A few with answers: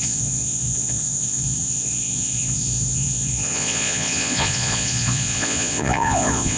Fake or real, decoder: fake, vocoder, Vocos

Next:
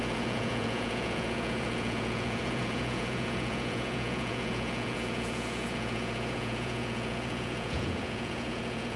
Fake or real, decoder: fake, vocoder, Vocos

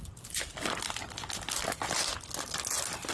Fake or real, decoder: real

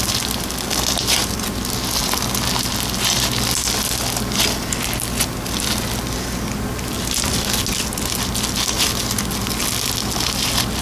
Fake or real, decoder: real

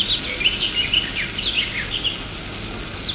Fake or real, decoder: real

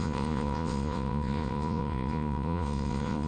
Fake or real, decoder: fake, vocoder, Vocos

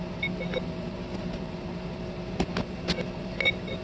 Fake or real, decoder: real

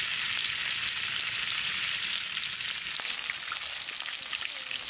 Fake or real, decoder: real